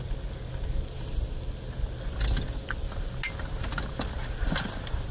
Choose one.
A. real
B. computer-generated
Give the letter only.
A